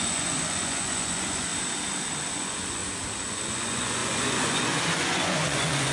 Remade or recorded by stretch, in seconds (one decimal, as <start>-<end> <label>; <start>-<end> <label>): 0.0-1.5 remade; 1.5-2.3 recorded; 2.3-2.8 remade; 2.8-3.3 recorded; 3.3-5.9 remade